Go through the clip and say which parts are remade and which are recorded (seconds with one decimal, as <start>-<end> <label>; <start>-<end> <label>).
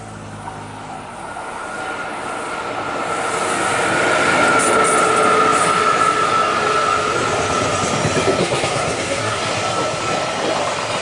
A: 0.0-8.4 recorded; 8.4-9.4 remade; 9.4-11.0 recorded